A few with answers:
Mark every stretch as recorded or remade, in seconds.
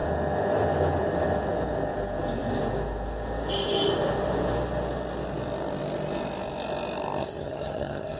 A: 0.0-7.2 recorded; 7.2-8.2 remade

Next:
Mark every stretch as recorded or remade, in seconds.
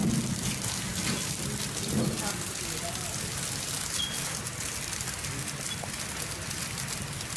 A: 0.0-7.4 recorded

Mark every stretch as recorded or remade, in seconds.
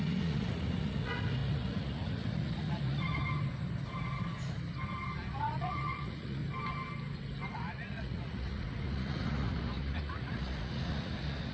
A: 0.0-3.2 remade; 3.2-5.4 recorded; 5.4-6.4 remade; 6.4-7.5 recorded; 7.5-11.5 remade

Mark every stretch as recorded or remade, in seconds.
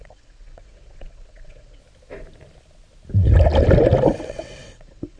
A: 0.0-1.8 remade; 1.8-4.2 recorded; 4.2-5.2 remade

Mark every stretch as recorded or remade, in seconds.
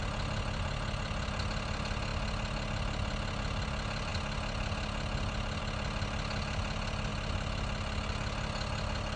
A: 0.0-9.2 recorded